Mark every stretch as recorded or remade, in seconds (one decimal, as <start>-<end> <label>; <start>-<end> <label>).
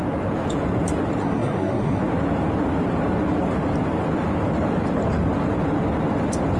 0.0-1.2 recorded; 1.2-2.0 remade; 2.0-6.6 recorded